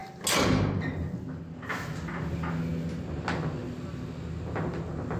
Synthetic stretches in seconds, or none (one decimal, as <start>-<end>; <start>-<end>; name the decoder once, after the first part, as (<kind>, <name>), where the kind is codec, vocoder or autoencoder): none